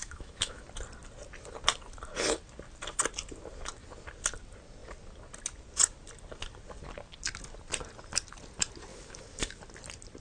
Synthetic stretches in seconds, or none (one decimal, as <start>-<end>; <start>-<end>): 0.0-0.6; 8.9-9.6